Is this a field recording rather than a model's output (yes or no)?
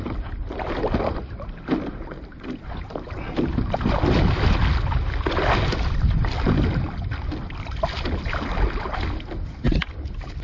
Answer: yes